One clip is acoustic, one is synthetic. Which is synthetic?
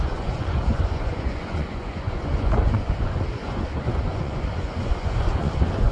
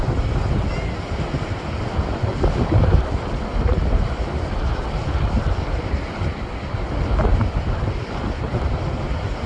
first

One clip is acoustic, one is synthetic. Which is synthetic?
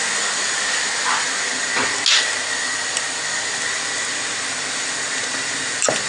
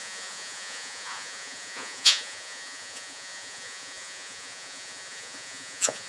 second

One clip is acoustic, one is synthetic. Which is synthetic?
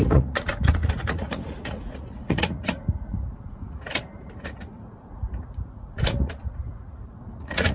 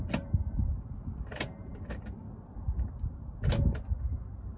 first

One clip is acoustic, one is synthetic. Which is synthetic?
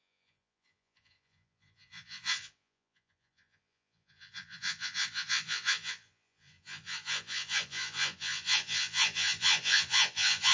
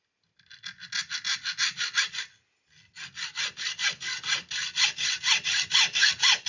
first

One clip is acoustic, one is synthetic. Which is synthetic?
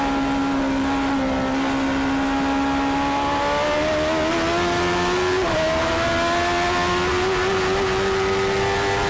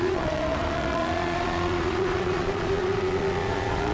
second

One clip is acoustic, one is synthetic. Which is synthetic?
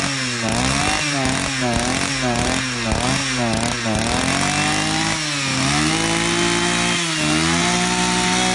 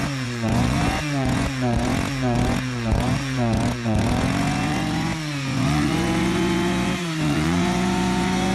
second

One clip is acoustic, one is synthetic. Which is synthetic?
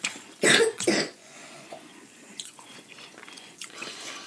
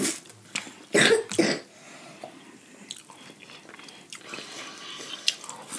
first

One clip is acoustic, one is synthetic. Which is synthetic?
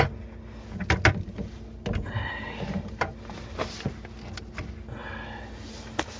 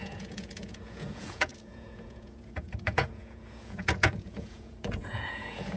second